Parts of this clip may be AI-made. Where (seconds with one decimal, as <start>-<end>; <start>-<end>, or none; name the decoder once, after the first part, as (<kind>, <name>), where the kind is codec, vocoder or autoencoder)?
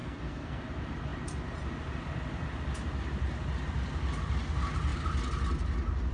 0.0-0.6 (codec, SNAC)